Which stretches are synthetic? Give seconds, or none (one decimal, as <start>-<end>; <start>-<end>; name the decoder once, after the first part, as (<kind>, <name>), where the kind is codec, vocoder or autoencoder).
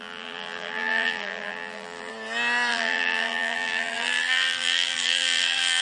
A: 0.0-2.1 (vocoder, BigVGAN v2); 2.7-5.8